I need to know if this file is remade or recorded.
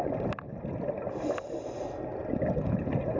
recorded